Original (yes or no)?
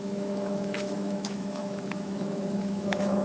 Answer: no